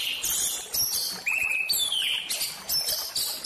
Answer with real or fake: real